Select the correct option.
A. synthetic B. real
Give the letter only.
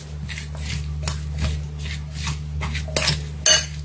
B